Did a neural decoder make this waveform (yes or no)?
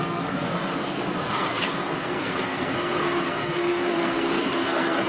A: yes